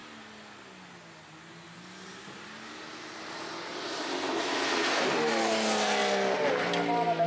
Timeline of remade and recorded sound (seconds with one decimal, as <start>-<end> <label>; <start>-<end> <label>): 0.0-7.3 recorded